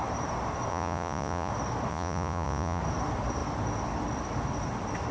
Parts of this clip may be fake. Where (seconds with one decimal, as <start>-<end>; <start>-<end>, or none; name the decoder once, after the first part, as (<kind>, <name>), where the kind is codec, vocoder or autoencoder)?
0.7-1.5 (vocoder, Vocos); 1.9-2.8